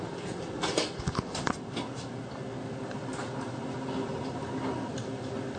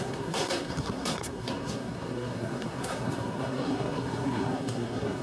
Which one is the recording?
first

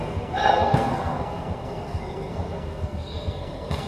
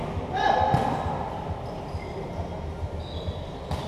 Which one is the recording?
second